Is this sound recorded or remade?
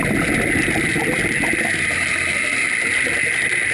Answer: recorded